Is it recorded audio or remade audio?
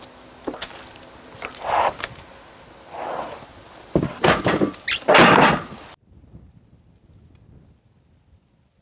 recorded